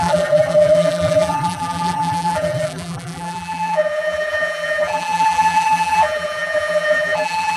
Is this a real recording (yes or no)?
no